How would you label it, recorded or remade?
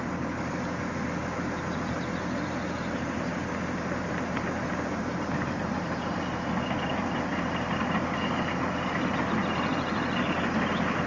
recorded